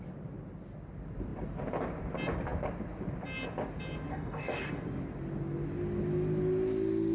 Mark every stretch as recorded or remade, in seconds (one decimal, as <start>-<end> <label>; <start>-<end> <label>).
0.0-4.1 recorded; 4.1-4.8 remade; 4.8-7.1 recorded